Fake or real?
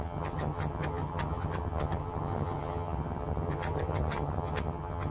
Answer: fake